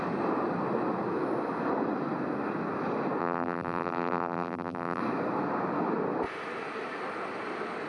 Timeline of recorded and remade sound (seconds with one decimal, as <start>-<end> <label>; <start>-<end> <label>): 0.0-3.2 recorded; 3.2-5.0 remade; 5.0-7.9 recorded